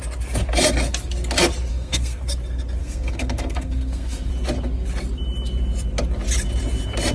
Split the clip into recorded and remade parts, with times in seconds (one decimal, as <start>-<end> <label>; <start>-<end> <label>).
0.0-1.7 recorded; 1.7-2.2 remade; 2.2-2.8 recorded; 2.8-4.3 remade; 4.3-7.1 recorded